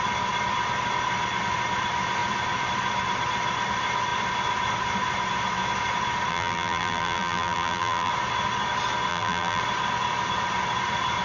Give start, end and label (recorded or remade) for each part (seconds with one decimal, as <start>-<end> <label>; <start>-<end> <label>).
0.0-6.3 recorded; 6.3-8.1 remade; 8.1-9.1 recorded; 9.1-9.6 remade; 9.6-11.2 recorded